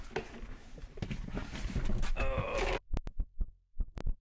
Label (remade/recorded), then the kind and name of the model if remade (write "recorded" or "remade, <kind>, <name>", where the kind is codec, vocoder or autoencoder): recorded